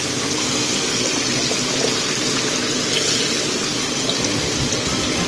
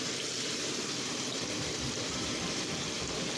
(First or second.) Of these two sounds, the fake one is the second